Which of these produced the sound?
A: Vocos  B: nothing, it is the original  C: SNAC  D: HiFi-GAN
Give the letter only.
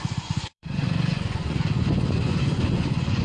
A